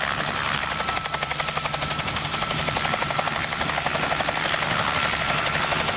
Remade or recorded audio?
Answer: recorded